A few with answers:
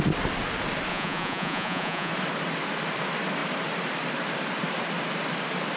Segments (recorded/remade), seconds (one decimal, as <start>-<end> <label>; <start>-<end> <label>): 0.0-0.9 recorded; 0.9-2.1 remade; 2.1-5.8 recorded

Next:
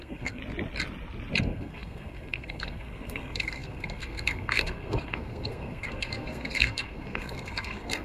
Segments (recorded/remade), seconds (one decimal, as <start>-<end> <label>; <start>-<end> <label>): 0.0-0.4 remade; 0.4-1.4 recorded; 1.4-8.0 remade

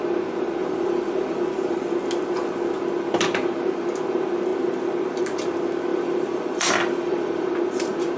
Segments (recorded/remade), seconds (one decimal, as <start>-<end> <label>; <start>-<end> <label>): 0.0-0.6 recorded; 0.6-1.9 remade; 1.9-5.9 recorded; 5.9-7.5 remade; 7.5-8.2 recorded

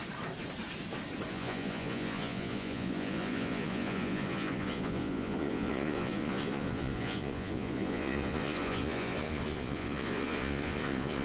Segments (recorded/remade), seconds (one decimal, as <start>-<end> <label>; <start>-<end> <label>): 0.0-1.3 recorded; 1.3-11.2 remade

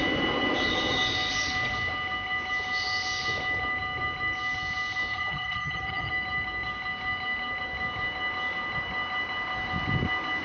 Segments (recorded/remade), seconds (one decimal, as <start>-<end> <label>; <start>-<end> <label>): 0.0-5.1 recorded; 5.1-6.1 remade; 6.1-10.4 recorded

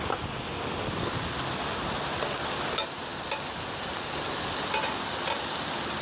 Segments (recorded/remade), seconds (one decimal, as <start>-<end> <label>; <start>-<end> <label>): 0.0-6.0 recorded